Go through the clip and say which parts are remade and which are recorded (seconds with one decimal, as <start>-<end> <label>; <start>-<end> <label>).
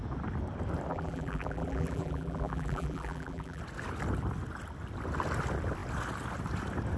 0.0-0.9 recorded; 0.9-3.6 remade; 3.6-7.0 recorded